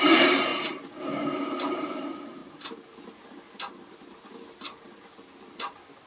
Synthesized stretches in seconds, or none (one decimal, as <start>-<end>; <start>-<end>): 0.0-0.5; 1.7-2.4